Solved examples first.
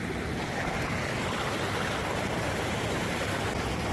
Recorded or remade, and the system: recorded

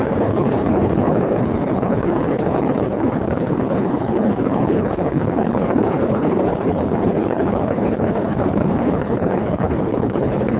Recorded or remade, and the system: remade, codec, HILCodec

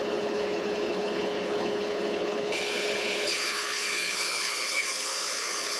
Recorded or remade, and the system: remade, codec, HILCodec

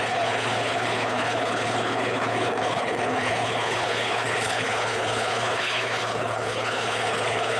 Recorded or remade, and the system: remade, codec, HILCodec